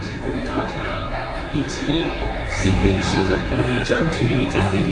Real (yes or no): no